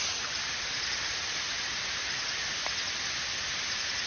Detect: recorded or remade recorded